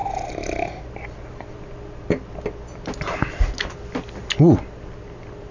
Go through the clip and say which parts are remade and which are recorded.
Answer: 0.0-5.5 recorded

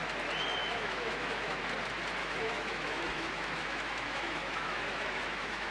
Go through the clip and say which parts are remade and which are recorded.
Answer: 0.0-0.6 recorded; 0.6-1.6 remade; 1.6-2.2 recorded; 2.2-5.7 remade

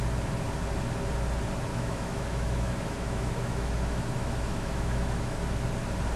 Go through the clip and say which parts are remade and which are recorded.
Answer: 0.0-1.7 recorded; 1.7-5.4 remade; 5.4-6.2 recorded

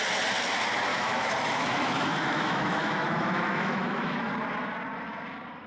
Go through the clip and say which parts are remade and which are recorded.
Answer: 0.0-0.9 recorded; 0.9-4.3 remade; 4.3-5.7 recorded

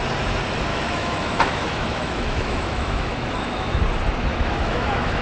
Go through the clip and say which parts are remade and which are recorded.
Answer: 0.0-0.7 recorded; 0.7-3.8 remade; 3.8-4.3 recorded; 4.3-5.2 remade

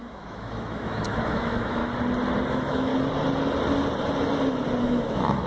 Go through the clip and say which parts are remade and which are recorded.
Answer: 0.0-1.8 remade; 1.8-2.5 recorded; 2.5-2.9 remade; 2.9-4.8 recorded; 4.8-5.5 remade

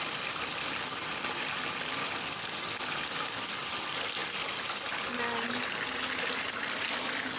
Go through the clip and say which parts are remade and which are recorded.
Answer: 0.0-7.4 recorded

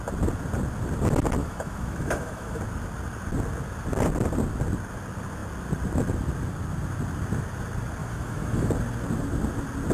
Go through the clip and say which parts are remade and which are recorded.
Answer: 0.0-1.4 recorded; 1.4-2.6 remade; 2.6-8.0 recorded; 8.0-8.7 remade; 8.7-9.9 recorded